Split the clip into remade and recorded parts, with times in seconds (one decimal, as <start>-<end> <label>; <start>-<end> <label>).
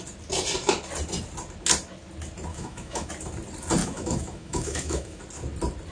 0.0-2.5 recorded; 2.5-3.1 remade; 3.1-3.8 recorded; 3.8-5.2 remade; 5.2-5.9 recorded